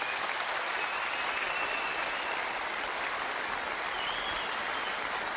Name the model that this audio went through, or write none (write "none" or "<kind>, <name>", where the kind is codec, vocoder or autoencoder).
none